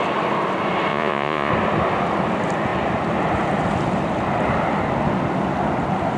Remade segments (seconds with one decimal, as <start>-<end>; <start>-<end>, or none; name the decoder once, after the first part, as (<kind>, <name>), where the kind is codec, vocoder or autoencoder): 0.9-1.5 (vocoder, Vocos)